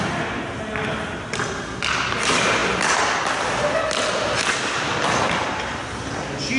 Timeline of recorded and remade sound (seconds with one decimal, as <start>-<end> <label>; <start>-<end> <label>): 0.0-6.6 recorded